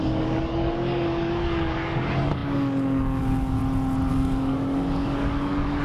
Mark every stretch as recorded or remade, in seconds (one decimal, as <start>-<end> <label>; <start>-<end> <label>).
0.0-3.6 remade; 3.6-4.1 recorded; 4.1-5.8 remade